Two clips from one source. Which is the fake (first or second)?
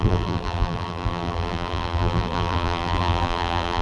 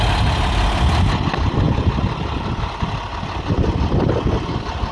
first